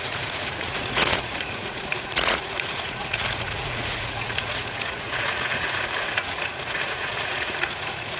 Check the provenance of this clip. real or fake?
fake